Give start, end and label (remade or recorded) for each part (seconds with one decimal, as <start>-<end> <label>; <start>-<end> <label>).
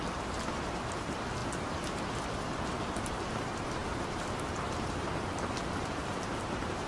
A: 0.0-1.4 recorded; 1.4-2.2 remade; 2.2-3.8 recorded; 3.8-4.7 remade; 4.7-6.9 recorded